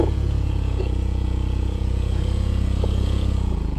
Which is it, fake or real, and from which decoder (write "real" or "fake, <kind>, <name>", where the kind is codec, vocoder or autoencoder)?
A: fake, vocoder, Vocos